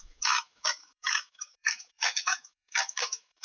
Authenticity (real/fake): fake